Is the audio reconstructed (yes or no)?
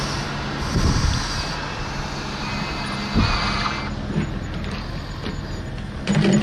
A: no